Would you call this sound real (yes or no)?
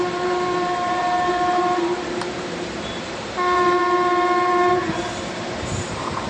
no